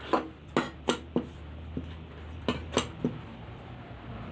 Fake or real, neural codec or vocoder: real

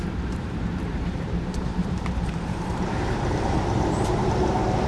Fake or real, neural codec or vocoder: fake, vocoder, BigVGAN v2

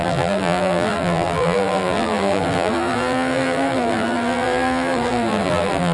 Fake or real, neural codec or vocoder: fake, vocoder, BigVGAN v2